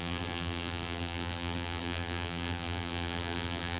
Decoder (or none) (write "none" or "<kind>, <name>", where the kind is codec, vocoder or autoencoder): vocoder, BigVGAN v2